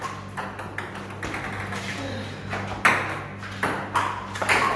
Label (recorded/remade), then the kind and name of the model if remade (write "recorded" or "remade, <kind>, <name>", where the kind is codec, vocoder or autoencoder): recorded